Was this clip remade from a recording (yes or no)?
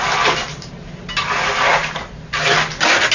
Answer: no